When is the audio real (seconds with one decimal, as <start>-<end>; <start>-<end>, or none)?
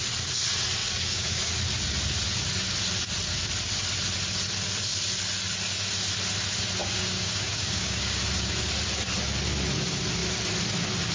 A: 0.0-0.8; 1.5-6.8; 8.3-11.1